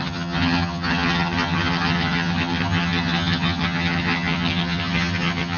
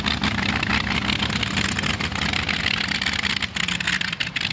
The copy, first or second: first